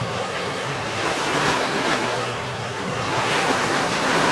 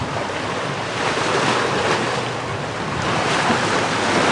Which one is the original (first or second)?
second